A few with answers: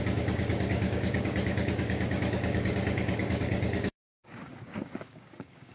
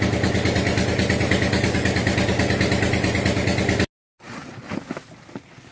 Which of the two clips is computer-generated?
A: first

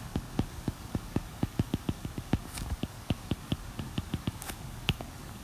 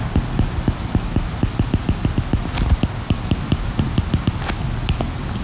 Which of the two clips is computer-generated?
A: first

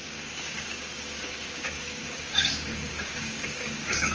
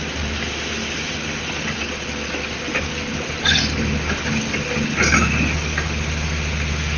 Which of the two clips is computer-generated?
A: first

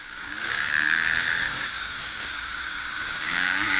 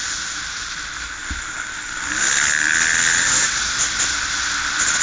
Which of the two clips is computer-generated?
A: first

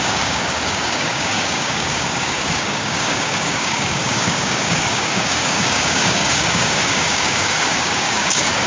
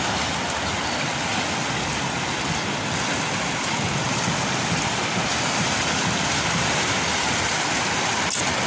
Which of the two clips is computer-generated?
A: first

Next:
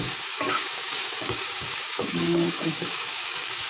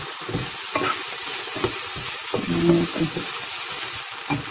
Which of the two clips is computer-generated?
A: first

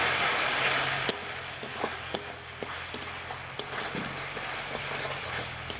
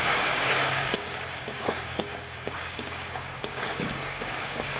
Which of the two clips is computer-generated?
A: second